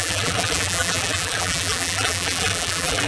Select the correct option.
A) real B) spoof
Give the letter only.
B